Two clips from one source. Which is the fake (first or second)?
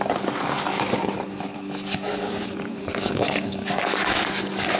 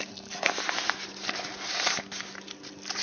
first